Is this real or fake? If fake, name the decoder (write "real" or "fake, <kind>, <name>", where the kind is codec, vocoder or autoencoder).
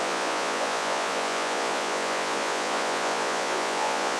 fake, vocoder, Vocos